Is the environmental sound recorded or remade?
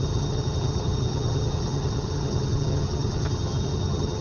remade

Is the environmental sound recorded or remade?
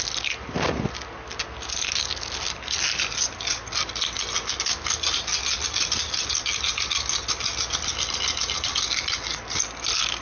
recorded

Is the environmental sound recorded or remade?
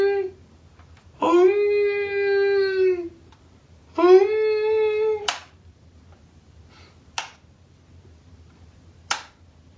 recorded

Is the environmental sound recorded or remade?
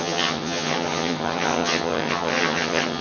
remade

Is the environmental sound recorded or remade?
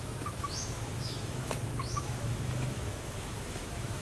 remade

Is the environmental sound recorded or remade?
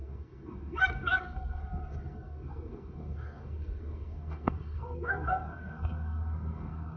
remade